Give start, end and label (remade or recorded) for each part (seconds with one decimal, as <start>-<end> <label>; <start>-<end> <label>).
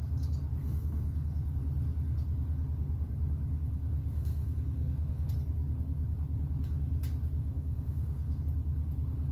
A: 0.0-0.6 recorded; 0.6-1.6 remade; 1.6-4.0 recorded; 4.0-5.3 remade; 5.3-7.4 recorded; 7.4-8.4 remade; 8.4-9.3 recorded